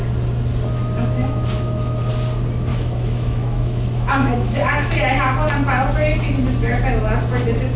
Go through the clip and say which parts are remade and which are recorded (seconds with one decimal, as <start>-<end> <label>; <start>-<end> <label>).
0.0-1.2 recorded; 1.2-2.1 remade; 2.1-2.7 recorded; 2.7-4.9 remade; 4.9-7.8 recorded